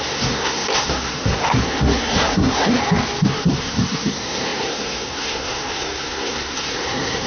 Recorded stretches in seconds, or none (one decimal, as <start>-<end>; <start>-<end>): 2.8-3.3